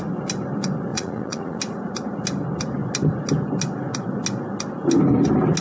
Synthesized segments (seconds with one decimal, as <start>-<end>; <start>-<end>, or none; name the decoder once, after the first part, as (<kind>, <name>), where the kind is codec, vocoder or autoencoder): 0.9-1.6 (vocoder, Vocos)